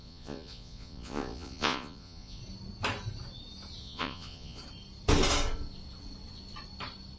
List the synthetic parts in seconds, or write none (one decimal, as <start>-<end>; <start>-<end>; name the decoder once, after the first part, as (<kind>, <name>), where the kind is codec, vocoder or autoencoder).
0.0-2.4 (vocoder, Vocos); 3.8-4.6